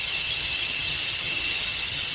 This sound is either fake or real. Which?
fake